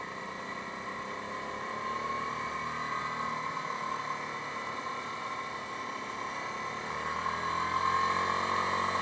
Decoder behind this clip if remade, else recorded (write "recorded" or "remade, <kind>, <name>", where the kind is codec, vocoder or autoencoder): recorded